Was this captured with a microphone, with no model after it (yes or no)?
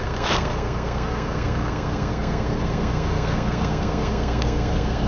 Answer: no